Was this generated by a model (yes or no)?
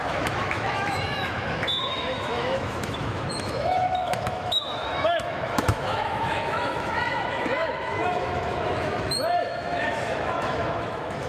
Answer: yes